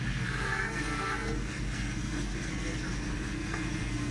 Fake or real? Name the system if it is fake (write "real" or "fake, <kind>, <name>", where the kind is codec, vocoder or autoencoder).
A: fake, codec, SNAC